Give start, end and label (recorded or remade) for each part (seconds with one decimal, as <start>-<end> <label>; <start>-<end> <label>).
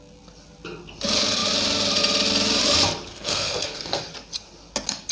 0.0-3.1 recorded; 3.1-4.0 remade; 4.0-5.1 recorded